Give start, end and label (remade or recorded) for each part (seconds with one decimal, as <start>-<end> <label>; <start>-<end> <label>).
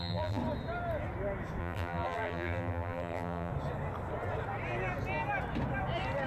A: 0.0-0.4 remade; 0.4-1.6 recorded; 1.6-3.5 remade; 3.5-6.3 recorded